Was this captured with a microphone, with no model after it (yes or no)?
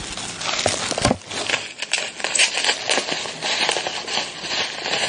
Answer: yes